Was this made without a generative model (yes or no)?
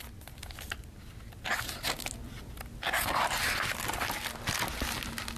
yes